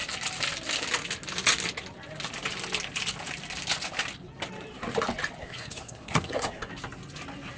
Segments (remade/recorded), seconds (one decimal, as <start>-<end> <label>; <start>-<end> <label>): 0.0-5.4 recorded; 5.4-6.7 remade; 6.7-7.6 recorded